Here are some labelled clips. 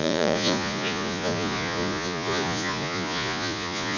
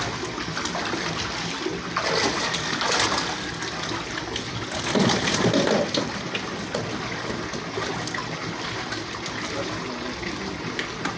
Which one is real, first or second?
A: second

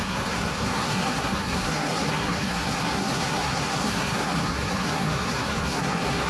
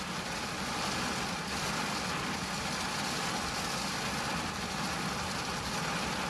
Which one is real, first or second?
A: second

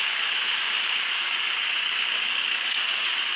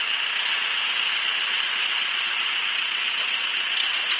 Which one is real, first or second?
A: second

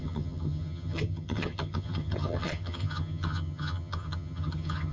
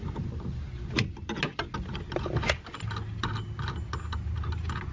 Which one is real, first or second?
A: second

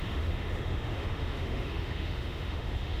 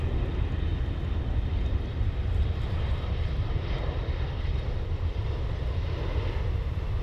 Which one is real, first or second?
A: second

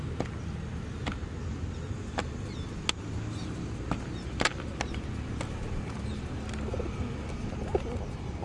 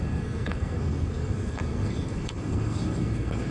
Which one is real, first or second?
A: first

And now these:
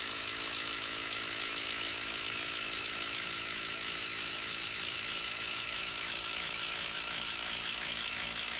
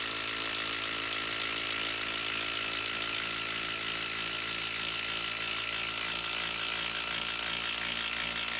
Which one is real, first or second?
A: second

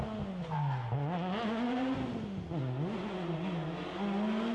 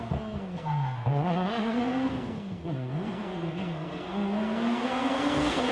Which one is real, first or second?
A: first